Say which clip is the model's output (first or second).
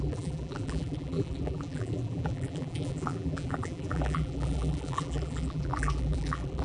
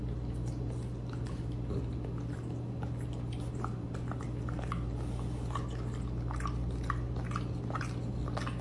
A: first